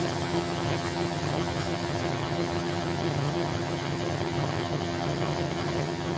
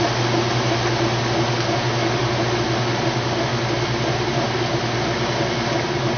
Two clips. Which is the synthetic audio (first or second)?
first